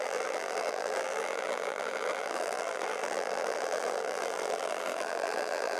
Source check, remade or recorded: remade